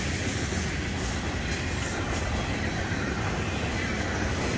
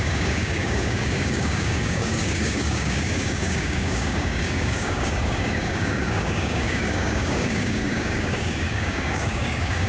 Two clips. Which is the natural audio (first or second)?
first